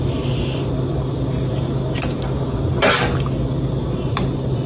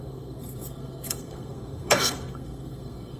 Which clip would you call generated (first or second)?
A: second